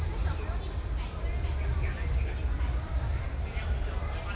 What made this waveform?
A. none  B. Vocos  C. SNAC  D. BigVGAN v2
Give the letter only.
A